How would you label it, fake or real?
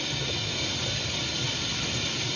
real